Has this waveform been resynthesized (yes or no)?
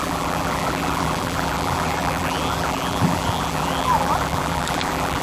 yes